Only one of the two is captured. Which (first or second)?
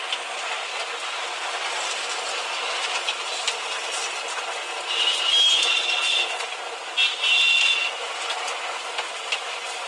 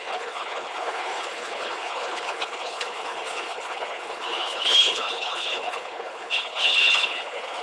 first